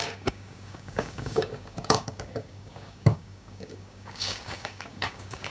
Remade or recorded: remade